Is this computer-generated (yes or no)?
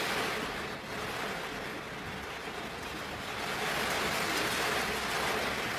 yes